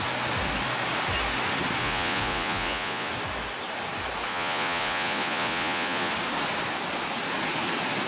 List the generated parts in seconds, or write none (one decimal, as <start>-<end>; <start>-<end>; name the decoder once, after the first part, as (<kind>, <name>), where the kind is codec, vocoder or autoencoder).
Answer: 1.8-3.1 (vocoder, Vocos); 4.3-6.1

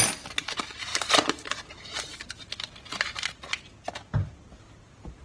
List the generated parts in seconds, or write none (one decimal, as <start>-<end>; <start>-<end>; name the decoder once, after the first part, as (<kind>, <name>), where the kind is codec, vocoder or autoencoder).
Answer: none

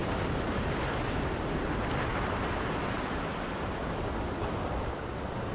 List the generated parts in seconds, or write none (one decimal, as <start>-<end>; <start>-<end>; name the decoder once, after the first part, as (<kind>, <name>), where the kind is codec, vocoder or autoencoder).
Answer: none

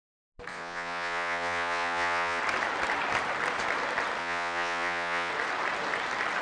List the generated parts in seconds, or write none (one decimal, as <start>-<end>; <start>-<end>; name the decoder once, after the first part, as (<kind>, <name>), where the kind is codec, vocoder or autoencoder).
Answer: 0.5-2.4 (vocoder, Vocos); 4.2-5.3

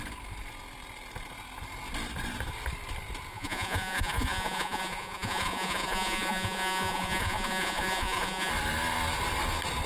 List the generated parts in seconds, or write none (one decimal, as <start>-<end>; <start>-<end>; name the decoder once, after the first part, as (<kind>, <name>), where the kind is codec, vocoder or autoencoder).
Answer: 3.3-8.5 (vocoder, Vocos)